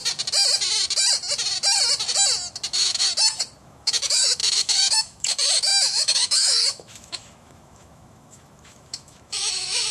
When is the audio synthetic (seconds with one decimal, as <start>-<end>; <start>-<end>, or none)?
2.7-3.1; 3.6-9.9